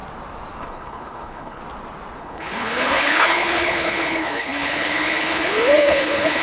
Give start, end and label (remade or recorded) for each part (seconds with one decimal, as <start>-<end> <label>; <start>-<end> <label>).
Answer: 0.0-0.6 recorded; 0.6-1.6 remade; 1.6-2.2 recorded; 2.2-6.4 remade